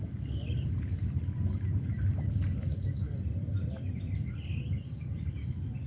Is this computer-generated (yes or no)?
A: no